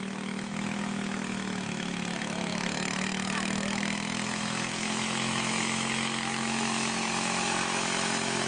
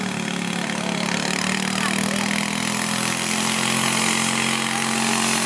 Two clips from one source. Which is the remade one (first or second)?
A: first